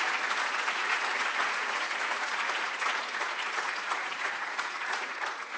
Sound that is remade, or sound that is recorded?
remade